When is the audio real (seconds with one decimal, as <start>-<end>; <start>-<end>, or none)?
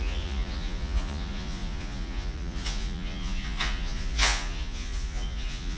none